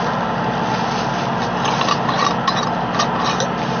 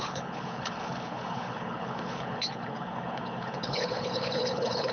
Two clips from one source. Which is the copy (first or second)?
second